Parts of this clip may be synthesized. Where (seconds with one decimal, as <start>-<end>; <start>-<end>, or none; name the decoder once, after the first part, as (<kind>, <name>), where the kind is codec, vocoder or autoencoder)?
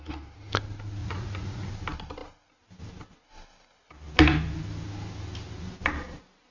1.0-1.7 (vocoder, Vocos)